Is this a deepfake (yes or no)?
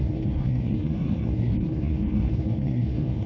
yes